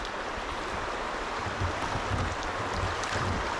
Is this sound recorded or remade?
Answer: recorded